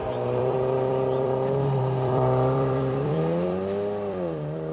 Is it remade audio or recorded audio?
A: remade